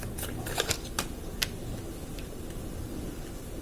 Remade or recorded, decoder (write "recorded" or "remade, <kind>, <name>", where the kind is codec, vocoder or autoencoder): recorded